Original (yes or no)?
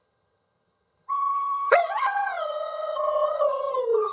no